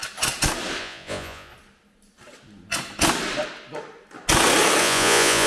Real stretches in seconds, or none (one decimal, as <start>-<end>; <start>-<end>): 0.0-0.8; 1.5-4.8